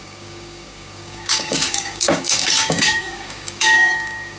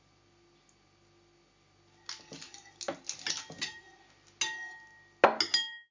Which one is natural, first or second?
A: second